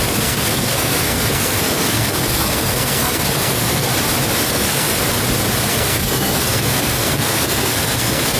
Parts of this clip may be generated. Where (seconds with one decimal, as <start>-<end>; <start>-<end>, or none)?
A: 0.0-3.9; 4.5-4.9; 5.7-8.4